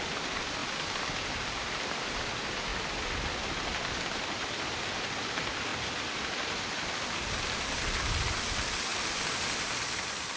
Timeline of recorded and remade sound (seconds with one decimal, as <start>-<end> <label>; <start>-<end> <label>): 0.0-0.6 recorded; 0.6-2.3 remade; 2.3-5.7 recorded; 5.7-6.9 remade; 6.9-8.9 recorded; 8.9-9.5 remade; 9.5-10.4 recorded